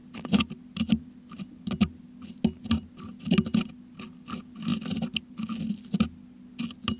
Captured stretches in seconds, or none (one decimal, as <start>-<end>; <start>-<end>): 0.0-7.0

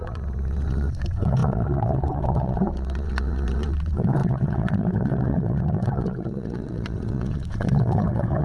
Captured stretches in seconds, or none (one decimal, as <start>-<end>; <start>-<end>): none

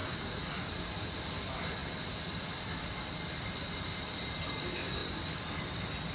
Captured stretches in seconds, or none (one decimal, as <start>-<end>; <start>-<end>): 0.0-6.1

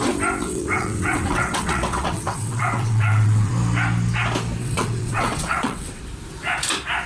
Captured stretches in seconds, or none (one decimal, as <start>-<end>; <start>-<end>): 0.0-0.4; 3.5-4.6; 6.0-7.1

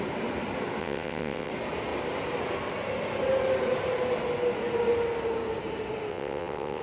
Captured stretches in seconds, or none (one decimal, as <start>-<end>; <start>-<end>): 0.0-0.8; 1.5-6.1

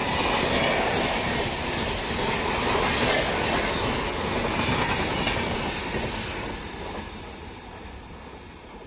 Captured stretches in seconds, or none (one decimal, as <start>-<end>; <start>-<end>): 0.0-8.9